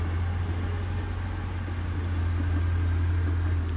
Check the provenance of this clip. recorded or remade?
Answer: recorded